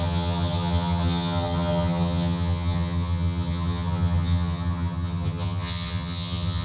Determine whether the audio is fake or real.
fake